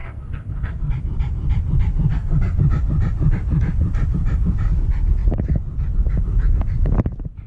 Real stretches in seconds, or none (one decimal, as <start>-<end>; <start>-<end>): 0.9-2.1; 2.6-7.5